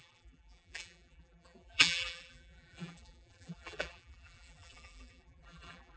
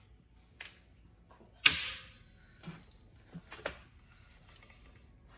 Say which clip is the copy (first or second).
first